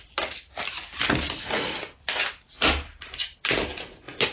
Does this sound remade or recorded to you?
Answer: recorded